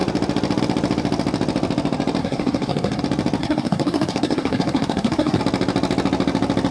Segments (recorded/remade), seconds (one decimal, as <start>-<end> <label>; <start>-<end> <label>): 0.0-2.2 recorded; 2.2-3.0 remade; 3.0-3.4 recorded; 3.4-5.4 remade; 5.4-6.7 recorded